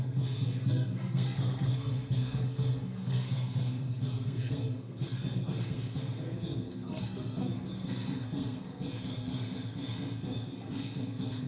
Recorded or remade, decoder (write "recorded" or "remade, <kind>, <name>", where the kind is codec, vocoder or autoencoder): remade, codec, SNAC